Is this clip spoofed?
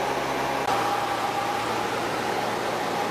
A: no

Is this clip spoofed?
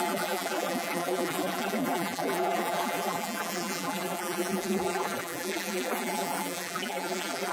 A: yes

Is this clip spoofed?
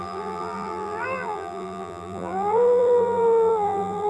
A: yes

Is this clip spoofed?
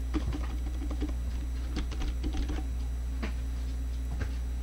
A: no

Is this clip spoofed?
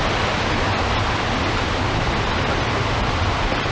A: no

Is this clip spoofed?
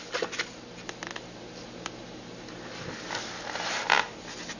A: no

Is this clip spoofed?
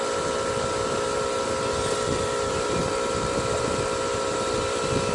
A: yes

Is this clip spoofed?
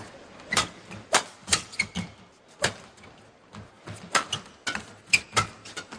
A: no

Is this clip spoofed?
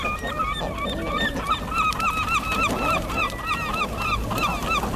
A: no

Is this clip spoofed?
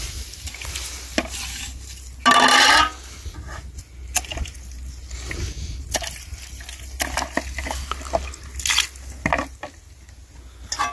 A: no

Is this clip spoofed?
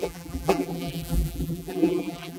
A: yes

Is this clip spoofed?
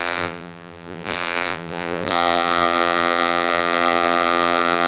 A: yes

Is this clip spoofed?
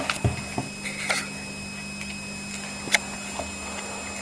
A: no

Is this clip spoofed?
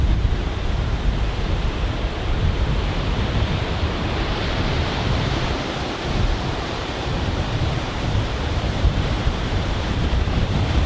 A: yes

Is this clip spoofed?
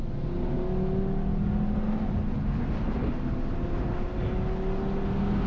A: no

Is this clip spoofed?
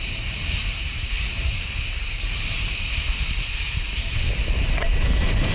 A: yes